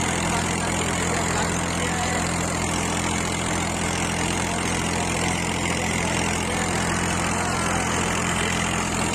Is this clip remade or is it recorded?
recorded